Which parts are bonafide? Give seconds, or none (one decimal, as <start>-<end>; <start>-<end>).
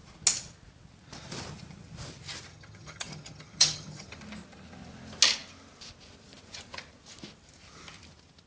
0.0-2.5; 4.2-8.5